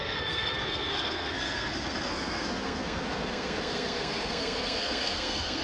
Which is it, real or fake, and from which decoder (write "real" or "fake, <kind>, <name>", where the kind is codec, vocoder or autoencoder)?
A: fake, codec, SNAC